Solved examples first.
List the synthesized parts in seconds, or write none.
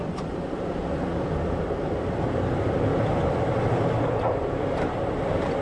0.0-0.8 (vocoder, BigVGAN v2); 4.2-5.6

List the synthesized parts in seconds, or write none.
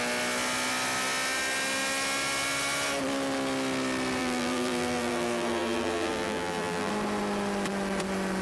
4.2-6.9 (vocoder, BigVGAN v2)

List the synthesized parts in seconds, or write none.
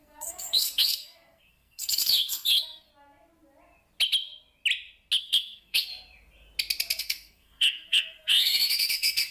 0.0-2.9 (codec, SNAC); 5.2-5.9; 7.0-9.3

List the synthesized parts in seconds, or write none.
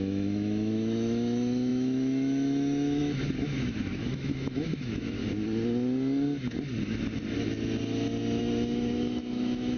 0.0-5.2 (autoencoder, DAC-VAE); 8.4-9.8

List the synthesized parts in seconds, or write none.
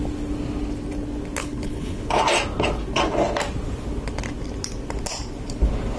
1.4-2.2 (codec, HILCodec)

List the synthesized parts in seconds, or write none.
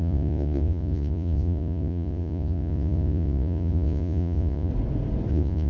0.0-4.7 (vocoder, Vocos); 5.3-5.7